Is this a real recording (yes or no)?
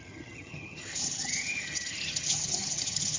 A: no